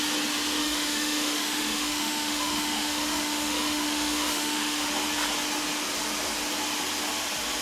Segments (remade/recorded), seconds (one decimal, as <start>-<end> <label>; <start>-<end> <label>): 0.0-0.6 recorded; 0.6-4.9 remade; 4.9-7.6 recorded